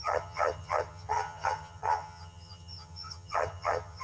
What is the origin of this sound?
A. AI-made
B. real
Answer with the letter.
A